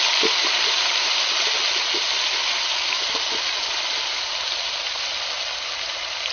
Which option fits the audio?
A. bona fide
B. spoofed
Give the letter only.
A